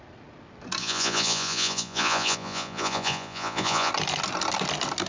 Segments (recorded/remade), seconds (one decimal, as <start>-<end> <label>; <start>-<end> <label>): 0.0-0.8 recorded; 0.8-3.9 remade; 3.9-5.1 recorded